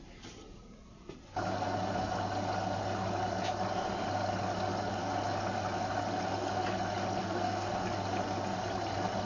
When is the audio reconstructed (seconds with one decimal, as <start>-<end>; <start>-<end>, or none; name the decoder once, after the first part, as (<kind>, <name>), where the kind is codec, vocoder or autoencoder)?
7.2-7.7 (codec, SNAC)